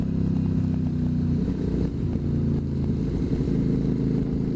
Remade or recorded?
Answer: recorded